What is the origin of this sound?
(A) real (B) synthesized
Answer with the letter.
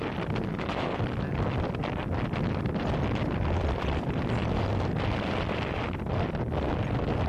A